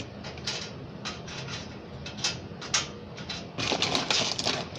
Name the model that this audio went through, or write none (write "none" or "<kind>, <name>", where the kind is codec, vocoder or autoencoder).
none